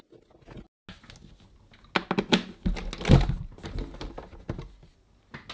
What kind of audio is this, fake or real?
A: real